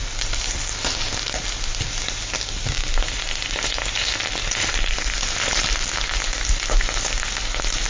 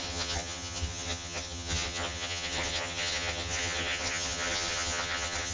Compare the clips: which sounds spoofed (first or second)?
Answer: second